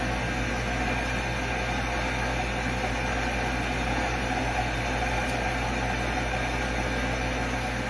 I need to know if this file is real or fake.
real